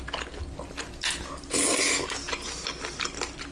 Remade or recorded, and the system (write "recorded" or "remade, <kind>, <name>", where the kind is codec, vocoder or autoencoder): recorded